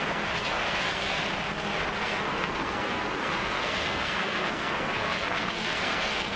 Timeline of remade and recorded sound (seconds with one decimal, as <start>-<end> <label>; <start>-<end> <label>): 0.0-1.2 remade; 1.2-1.9 recorded; 1.9-6.4 remade